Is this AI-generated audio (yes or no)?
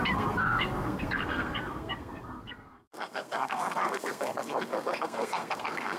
yes